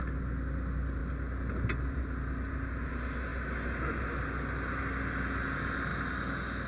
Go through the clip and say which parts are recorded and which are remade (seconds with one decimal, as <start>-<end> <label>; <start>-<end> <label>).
0.0-6.7 recorded